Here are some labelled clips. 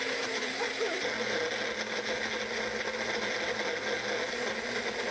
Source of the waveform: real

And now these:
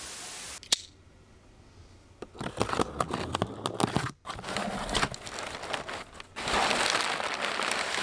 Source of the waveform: real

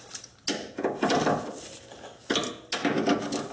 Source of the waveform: real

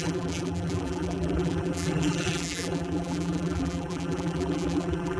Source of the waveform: fake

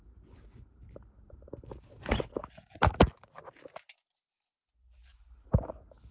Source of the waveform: real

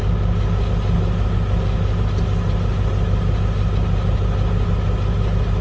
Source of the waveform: real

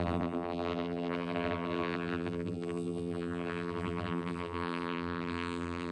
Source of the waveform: fake